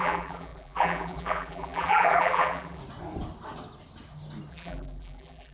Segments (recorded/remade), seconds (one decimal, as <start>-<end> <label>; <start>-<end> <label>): 0.0-2.8 remade; 2.8-4.5 recorded; 4.5-5.5 remade